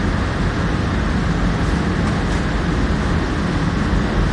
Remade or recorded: recorded